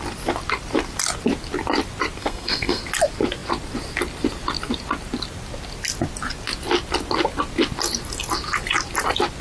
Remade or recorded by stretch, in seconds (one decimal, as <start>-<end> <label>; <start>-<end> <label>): 0.0-2.2 recorded; 2.2-2.8 remade; 2.8-9.4 recorded